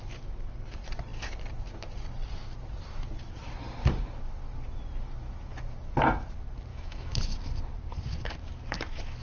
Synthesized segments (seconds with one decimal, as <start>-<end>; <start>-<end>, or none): 6.7-7.2